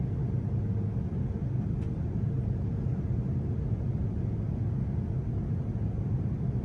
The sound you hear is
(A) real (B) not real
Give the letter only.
A